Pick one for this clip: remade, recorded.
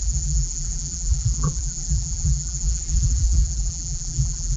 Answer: remade